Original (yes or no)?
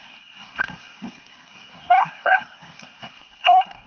no